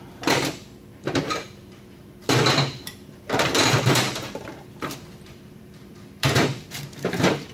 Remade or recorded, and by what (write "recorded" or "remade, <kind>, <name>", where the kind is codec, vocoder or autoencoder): remade, vocoder, BigVGAN v2